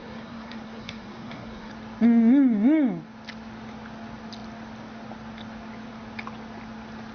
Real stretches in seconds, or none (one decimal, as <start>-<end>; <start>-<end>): 1.7-7.1